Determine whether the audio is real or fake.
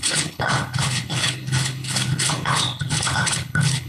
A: fake